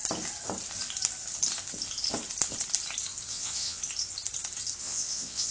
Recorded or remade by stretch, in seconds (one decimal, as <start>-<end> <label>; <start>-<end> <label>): 0.0-3.3 recorded; 3.3-3.8 remade; 3.8-4.8 recorded; 4.8-5.5 remade